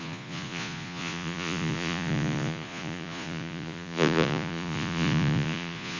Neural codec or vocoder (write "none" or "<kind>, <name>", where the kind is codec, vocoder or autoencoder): vocoder, Vocos